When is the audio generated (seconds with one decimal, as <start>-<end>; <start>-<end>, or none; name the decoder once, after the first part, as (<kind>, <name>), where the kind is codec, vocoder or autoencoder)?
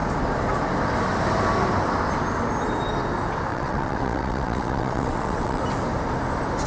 3.5-5.6 (vocoder, WaveNeXt)